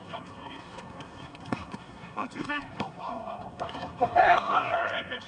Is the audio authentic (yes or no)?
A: no